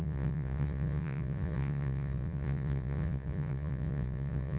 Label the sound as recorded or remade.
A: remade